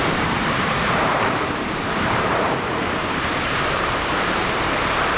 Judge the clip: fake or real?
fake